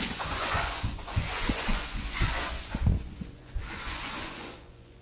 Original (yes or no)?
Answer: no